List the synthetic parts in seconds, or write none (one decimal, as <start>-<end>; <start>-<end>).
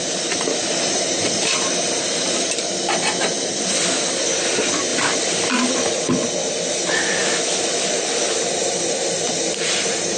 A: 0.0-2.5; 4.9-5.5